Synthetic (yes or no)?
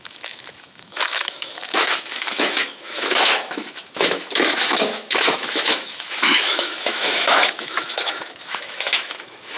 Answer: yes